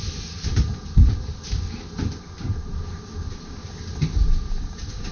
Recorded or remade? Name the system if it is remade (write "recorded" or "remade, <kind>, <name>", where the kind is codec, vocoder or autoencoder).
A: recorded